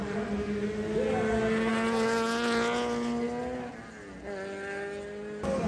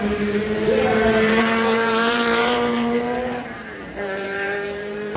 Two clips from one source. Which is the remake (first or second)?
second